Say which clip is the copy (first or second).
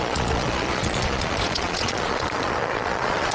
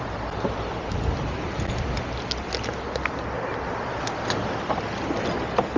first